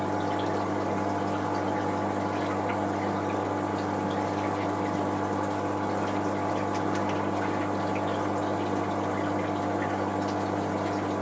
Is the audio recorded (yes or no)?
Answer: yes